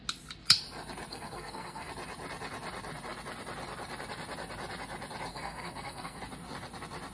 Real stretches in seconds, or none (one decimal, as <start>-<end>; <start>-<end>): 0.0-1.1; 1.9-5.3; 6.2-7.1